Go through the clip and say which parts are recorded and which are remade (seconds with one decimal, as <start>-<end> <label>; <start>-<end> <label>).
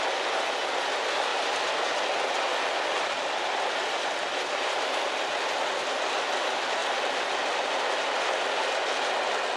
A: 0.0-9.6 recorded